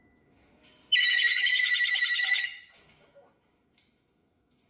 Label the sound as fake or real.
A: fake